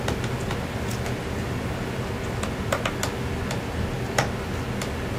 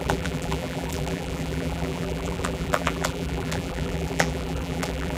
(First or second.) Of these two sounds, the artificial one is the second